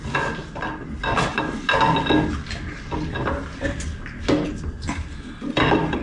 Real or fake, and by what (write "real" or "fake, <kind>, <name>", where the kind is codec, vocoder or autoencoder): real